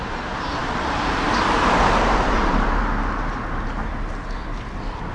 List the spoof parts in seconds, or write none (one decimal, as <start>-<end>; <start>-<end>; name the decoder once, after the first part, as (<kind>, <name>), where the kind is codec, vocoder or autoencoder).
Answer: 0.6-2.8 (vocoder, BigVGAN v2)